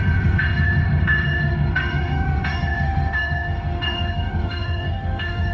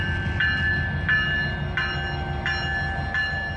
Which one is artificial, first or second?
first